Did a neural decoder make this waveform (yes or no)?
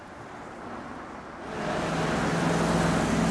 no